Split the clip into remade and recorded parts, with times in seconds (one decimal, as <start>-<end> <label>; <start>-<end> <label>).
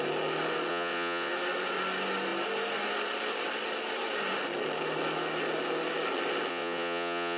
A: 0.0-0.7 recorded; 0.7-1.3 remade; 1.3-6.5 recorded; 6.5-7.4 remade